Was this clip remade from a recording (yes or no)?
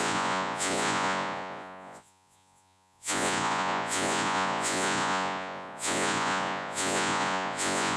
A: yes